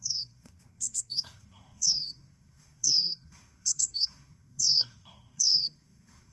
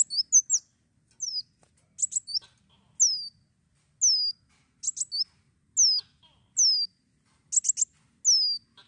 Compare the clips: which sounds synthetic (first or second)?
first